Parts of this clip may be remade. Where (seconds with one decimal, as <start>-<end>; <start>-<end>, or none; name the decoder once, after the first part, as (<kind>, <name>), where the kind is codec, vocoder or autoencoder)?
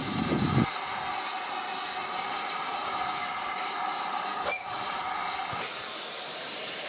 none